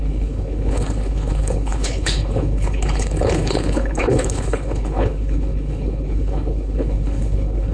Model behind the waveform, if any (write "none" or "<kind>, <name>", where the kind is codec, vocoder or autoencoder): codec, HILCodec